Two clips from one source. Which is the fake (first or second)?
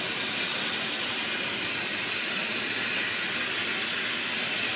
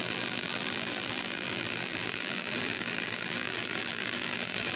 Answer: second